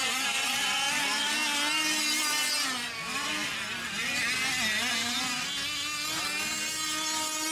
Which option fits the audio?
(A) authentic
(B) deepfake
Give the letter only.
A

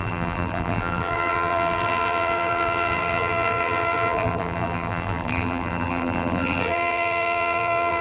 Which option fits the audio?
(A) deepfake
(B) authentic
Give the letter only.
A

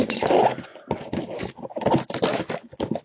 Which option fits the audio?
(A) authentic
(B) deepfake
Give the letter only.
A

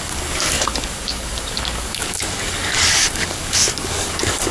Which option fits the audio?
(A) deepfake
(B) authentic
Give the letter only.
A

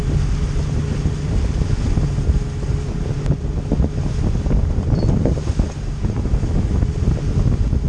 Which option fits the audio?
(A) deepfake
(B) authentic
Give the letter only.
B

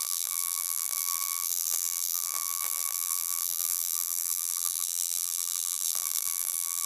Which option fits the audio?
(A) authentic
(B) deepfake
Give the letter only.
B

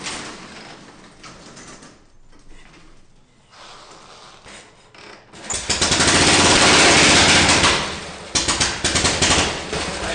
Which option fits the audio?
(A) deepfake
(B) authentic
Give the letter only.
B